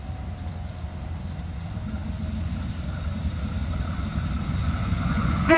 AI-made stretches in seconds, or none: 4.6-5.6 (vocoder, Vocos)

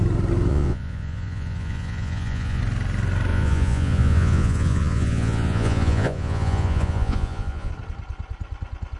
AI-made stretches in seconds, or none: 0.5-2.6 (vocoder, Vocos); 3.3-7.7

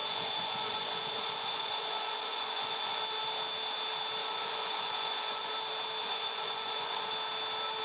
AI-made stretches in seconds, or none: 0.0-3.0 (vocoder, Vocos); 4.2-5.5; 6.0-7.1

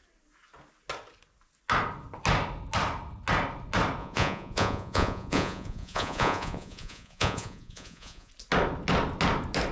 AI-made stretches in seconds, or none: 4.0-8.3 (vocoder, Vocos)

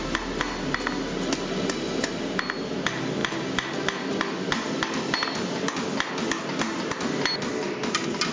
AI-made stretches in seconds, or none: none

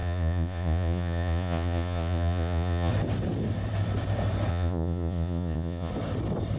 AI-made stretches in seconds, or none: 0.0-2.9 (vocoder, Vocos); 4.5-5.9

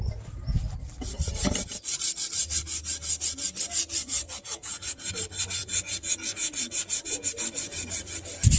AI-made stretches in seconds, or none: 4.0-5.1 (vocoder, Vocos); 5.6-7.3

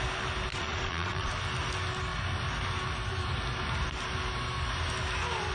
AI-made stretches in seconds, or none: 0.5-1.3 (vocoder, Vocos)